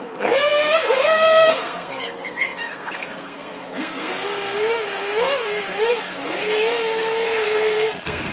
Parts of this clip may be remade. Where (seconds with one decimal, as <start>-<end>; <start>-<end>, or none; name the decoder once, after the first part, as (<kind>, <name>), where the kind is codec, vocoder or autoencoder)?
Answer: 0.0-8.3 (codec, SNAC)